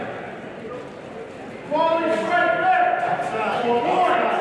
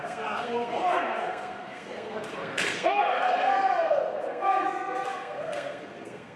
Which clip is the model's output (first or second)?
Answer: second